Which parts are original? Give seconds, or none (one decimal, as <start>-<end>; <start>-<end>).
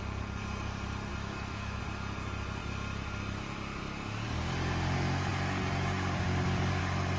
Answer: 0.0-1.1; 1.8-7.2